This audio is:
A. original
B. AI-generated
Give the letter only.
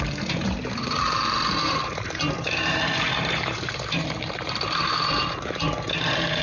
B